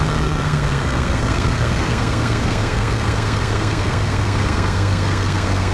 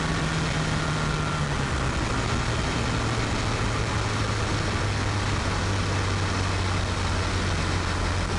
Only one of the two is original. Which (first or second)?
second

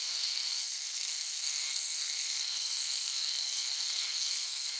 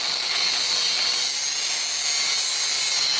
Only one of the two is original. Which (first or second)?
second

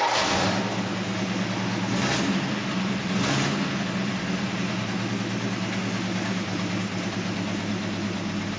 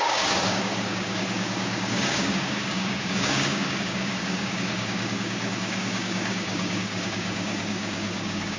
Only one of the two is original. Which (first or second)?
first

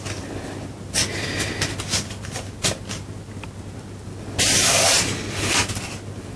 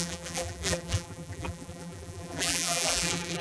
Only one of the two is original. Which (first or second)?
first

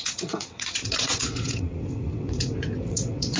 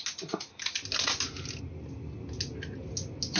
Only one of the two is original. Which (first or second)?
second